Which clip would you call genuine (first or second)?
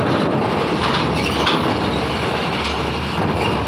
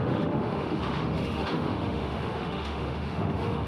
first